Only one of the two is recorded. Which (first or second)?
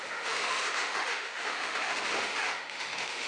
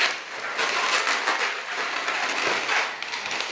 second